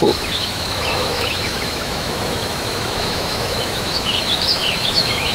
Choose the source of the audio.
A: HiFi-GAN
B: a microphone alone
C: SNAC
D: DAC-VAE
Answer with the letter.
D